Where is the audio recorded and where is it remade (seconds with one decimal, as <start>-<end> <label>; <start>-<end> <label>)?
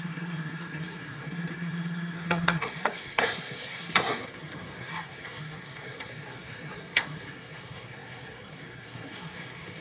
0.0-9.8 remade